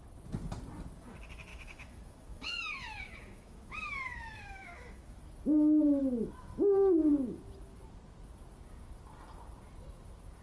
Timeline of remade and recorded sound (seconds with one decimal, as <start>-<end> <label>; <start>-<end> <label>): 0.0-1.5 recorded; 1.5-5.2 remade; 5.2-10.4 recorded